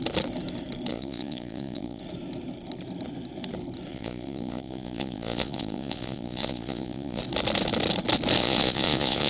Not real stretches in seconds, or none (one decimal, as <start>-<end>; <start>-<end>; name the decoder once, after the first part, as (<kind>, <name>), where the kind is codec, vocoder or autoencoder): 0.9-2.0 (vocoder, Vocos); 3.9-7.2; 8.4-9.3